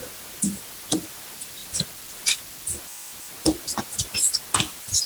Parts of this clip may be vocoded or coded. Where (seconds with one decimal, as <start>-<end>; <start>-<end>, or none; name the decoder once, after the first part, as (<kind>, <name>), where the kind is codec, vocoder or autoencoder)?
1.6-5.1 (vocoder, BigVGAN v2)